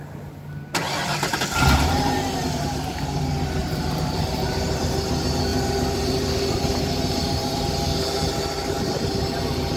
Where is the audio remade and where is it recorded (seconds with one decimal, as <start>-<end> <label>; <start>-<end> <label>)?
0.0-1.0 recorded; 1.0-3.2 remade; 3.2-3.6 recorded; 3.6-4.8 remade; 4.8-5.5 recorded; 5.5-7.6 remade; 7.6-8.6 recorded; 8.6-9.2 remade; 9.2-9.8 recorded